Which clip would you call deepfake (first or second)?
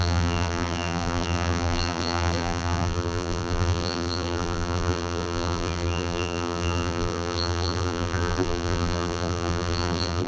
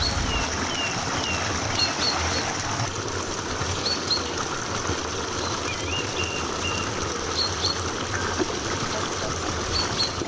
first